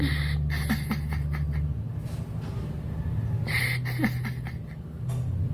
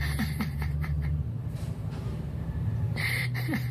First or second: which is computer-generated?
second